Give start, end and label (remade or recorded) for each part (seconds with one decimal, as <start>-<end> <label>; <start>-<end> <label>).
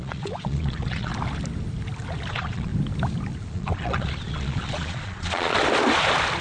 0.0-1.1 remade; 1.1-2.3 recorded; 2.3-2.7 remade; 2.7-3.5 recorded; 3.5-5.5 remade; 5.5-6.4 recorded